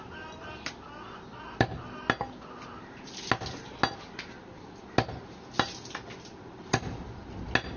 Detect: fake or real real